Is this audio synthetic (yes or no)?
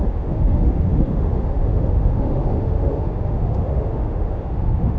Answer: yes